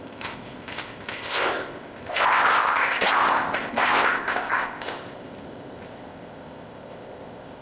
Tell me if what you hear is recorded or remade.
remade